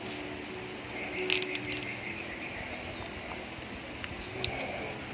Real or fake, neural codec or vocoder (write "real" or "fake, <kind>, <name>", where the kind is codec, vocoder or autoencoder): real